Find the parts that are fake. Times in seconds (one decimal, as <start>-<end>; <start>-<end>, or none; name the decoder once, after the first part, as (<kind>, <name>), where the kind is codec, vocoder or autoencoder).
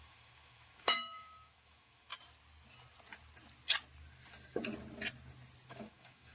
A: 0.0-2.1 (autoencoder, DAC-VAE); 5.7-6.3